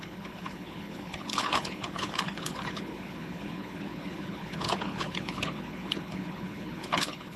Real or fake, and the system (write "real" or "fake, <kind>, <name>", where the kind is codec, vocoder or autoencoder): fake, codec, HILCodec